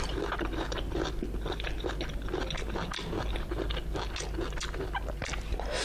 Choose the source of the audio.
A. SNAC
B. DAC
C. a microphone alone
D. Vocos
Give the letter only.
C